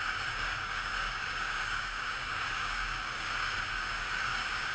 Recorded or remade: remade